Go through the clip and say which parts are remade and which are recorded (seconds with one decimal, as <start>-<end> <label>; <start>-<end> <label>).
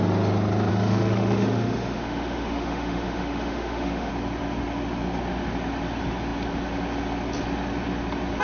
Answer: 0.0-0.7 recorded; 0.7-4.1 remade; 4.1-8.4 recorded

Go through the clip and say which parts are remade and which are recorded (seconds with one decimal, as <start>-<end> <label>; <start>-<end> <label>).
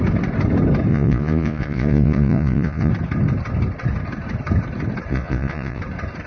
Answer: 0.0-0.9 recorded; 0.9-2.9 remade; 2.9-5.1 recorded; 5.1-5.8 remade; 5.8-6.3 recorded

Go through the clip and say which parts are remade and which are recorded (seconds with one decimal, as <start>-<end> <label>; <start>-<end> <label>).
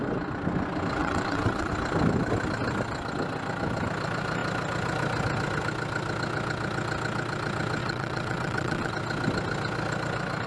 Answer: 0.0-1.0 recorded; 1.0-1.7 remade; 1.7-7.8 recorded; 7.8-8.9 remade; 8.9-10.5 recorded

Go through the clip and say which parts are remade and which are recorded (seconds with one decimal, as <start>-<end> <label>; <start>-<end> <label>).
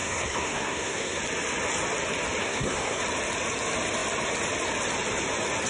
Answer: 0.0-1.2 remade; 1.2-2.4 recorded; 2.4-3.0 remade; 3.0-5.7 recorded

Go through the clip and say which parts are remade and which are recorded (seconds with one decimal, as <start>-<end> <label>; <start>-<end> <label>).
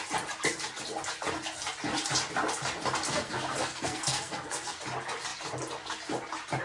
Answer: 0.0-3.1 recorded; 3.1-4.8 remade; 4.8-6.6 recorded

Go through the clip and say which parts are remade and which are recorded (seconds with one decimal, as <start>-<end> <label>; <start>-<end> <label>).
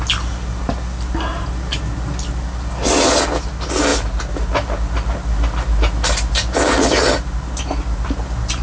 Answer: 0.0-8.6 recorded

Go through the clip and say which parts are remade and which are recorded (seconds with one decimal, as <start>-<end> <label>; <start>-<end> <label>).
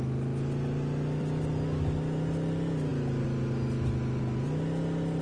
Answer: 0.0-5.2 recorded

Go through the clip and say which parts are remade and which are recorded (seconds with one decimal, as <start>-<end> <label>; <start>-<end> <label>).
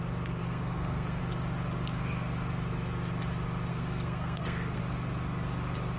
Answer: 0.0-0.4 recorded; 0.4-1.2 remade; 1.2-3.7 recorded; 3.7-4.8 remade; 4.8-6.0 recorded